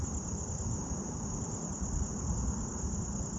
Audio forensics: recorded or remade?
recorded